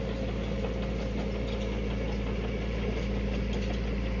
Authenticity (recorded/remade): recorded